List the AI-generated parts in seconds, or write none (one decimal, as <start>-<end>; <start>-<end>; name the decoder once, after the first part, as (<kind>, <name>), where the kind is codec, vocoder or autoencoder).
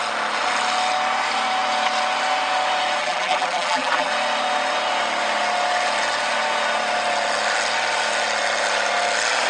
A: 3.0-4.1 (vocoder, BigVGAN v2)